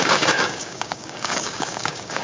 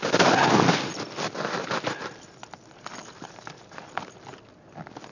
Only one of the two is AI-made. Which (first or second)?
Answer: first